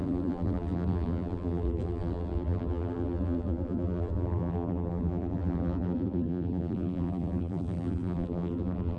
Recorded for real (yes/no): no